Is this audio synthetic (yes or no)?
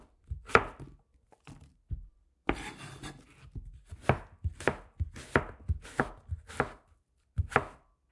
no